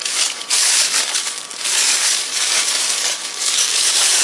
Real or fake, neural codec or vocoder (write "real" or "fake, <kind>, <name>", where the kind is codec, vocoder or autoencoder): fake, codec, DAC